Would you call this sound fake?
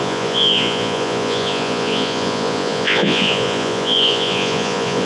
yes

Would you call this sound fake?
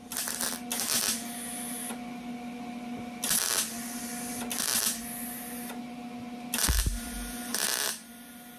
no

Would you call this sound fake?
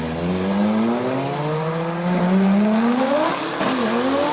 no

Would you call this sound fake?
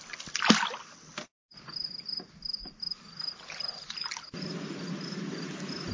no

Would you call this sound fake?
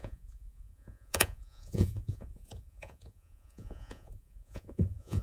yes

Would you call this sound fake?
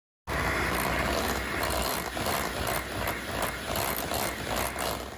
no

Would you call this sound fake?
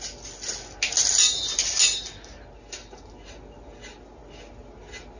no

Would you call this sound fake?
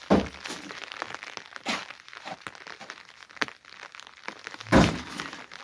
no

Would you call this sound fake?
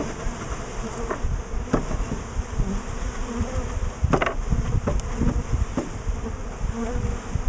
no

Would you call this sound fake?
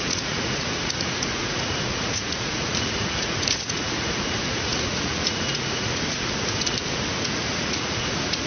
yes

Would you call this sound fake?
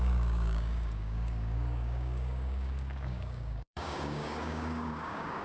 yes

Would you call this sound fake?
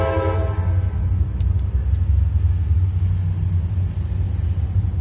no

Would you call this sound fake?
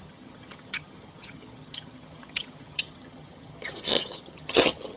yes